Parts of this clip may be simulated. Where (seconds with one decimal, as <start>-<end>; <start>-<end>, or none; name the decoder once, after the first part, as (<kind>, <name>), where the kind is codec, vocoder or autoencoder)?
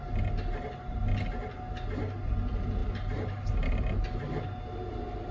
none